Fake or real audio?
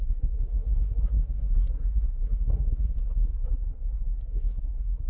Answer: fake